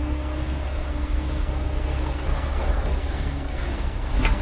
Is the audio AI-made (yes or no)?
yes